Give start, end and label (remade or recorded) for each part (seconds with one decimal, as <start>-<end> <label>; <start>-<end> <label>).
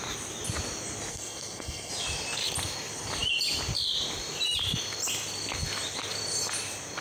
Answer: 0.0-1.1 recorded; 1.1-1.9 remade; 1.9-7.0 recorded